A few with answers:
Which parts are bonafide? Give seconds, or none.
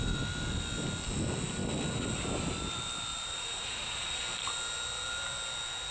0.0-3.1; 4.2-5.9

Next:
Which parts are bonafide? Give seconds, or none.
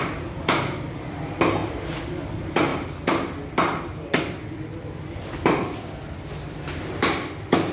none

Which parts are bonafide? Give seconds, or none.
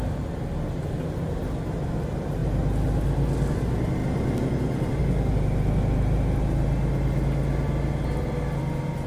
0.0-9.1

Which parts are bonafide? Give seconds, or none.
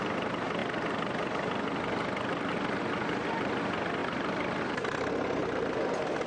0.0-6.3